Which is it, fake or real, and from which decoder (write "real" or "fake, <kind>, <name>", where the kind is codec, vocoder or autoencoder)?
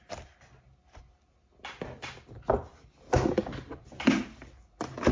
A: real